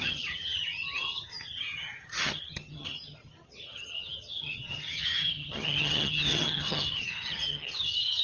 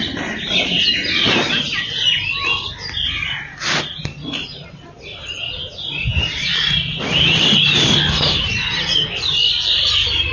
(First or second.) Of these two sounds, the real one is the second